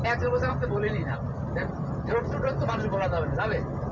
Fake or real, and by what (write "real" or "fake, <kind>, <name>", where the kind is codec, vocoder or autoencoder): real